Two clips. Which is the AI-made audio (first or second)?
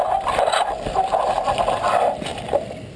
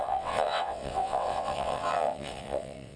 second